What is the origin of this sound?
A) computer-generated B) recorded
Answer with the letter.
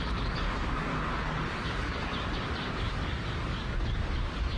A